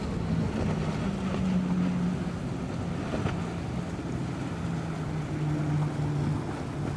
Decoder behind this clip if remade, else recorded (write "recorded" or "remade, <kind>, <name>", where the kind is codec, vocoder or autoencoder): recorded